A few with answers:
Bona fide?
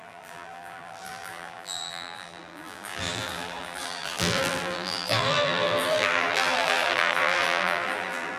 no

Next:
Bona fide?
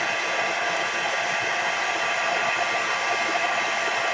yes